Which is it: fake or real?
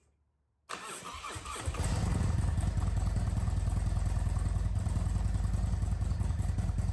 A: real